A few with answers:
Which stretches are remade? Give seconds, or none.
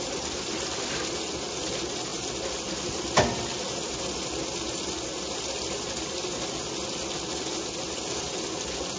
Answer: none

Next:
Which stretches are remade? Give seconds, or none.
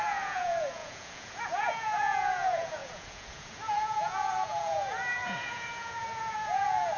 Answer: 0.0-7.0 (vocoder, Vocos)